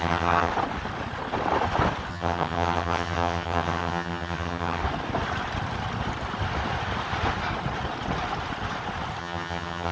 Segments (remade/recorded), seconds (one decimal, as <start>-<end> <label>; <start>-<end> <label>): 0.0-0.5 remade; 0.5-2.1 recorded; 2.1-4.8 remade; 4.8-9.2 recorded; 9.2-9.9 remade